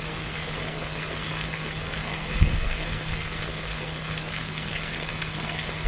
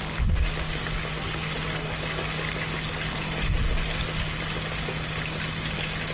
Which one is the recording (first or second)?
second